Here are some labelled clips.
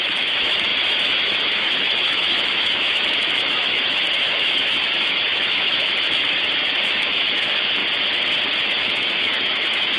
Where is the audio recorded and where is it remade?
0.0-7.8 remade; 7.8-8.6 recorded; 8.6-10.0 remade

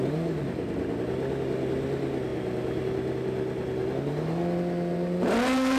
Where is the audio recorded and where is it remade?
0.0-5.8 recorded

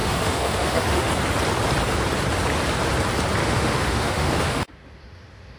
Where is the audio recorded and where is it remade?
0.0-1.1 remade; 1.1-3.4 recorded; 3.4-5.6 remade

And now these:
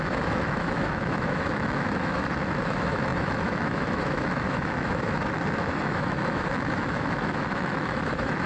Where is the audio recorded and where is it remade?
0.0-8.5 remade

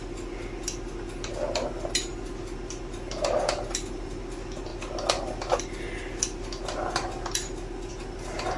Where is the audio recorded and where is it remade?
0.0-8.6 recorded

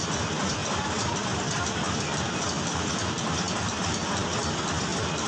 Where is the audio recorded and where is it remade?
0.0-5.3 recorded